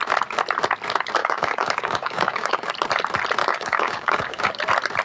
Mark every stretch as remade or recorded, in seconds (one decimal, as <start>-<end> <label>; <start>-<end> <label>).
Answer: 0.0-1.2 recorded; 1.2-2.7 remade; 2.7-3.4 recorded; 3.4-4.5 remade; 4.5-5.0 recorded